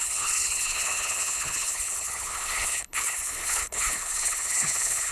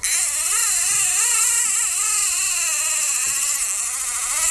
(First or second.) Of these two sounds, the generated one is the first